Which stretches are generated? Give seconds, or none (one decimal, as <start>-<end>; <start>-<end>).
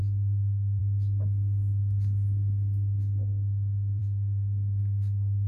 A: 0.0-0.8; 4.0-5.5